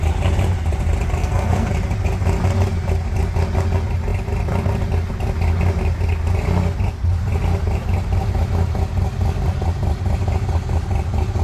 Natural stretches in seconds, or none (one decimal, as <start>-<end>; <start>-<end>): 0.0-1.2; 1.7-11.4